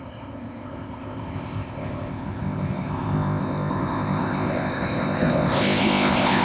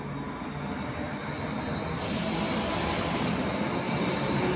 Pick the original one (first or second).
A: second